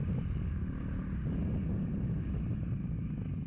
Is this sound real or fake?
real